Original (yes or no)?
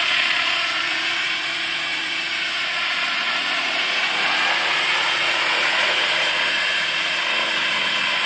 no